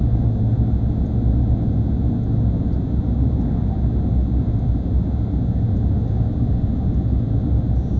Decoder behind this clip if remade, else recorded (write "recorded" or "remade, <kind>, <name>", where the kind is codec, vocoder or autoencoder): recorded